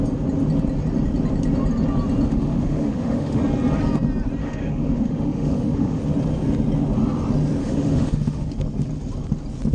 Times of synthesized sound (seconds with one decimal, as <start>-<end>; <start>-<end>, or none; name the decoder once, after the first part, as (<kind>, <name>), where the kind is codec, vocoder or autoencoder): 2.3-3.4 (autoencoder, DAC-VAE); 4.4-6.0; 7.6-8.5